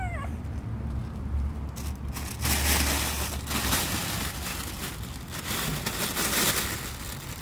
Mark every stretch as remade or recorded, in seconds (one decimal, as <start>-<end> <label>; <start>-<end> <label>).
0.0-7.4 recorded

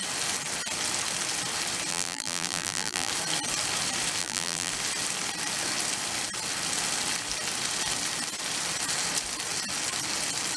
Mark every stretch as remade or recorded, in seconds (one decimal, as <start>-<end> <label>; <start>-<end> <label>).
0.0-1.9 recorded; 1.9-3.1 remade; 3.1-4.2 recorded; 4.2-4.7 remade; 4.7-10.6 recorded

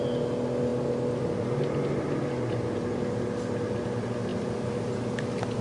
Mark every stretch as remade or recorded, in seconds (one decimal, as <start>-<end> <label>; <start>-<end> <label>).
0.0-4.3 recorded; 4.3-4.8 remade; 4.8-5.6 recorded

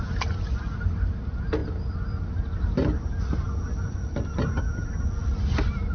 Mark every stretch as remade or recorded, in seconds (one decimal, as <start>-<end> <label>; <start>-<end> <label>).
0.0-1.6 recorded; 1.6-5.1 remade; 5.1-5.9 recorded

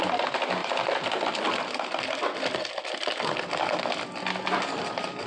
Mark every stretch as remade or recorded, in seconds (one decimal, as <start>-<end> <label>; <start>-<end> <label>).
0.0-0.6 recorded; 0.6-3.8 remade; 3.8-5.3 recorded